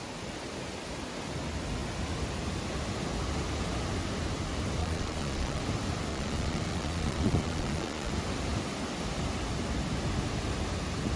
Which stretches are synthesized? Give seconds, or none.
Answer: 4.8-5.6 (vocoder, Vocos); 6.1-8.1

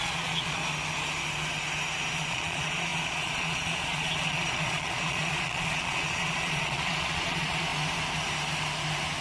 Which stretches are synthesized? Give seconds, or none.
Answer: 0.0-0.6 (vocoder, Vocos); 2.1-7.7

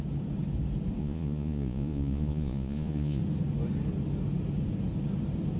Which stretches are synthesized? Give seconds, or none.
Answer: 1.0-3.2 (vocoder, Vocos)

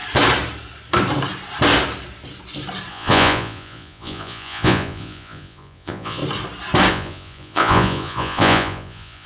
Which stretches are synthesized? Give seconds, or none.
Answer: 2.9-6.2 (vocoder, Vocos); 6.9-9.3

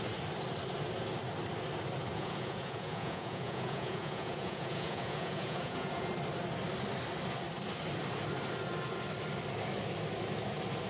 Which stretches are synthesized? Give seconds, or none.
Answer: 2.1-6.1 (vocoder, Vocos)

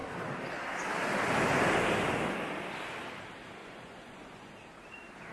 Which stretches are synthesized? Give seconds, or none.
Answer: 3.6-4.5 (vocoder, Vocos)

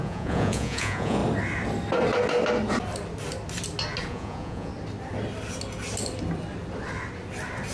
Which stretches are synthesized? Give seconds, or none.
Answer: 0.0-1.2 (vocoder, Vocos); 4.1-4.7